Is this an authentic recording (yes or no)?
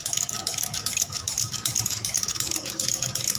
no